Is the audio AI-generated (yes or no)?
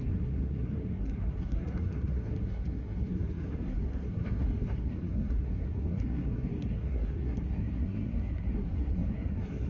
yes